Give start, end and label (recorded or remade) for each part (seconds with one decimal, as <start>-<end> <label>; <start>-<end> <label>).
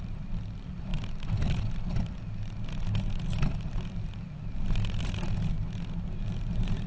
0.0-6.9 recorded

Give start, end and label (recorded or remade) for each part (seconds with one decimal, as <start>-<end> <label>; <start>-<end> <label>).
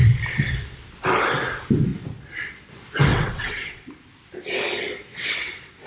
0.0-3.1 recorded; 3.1-3.9 remade; 3.9-5.1 recorded; 5.1-5.9 remade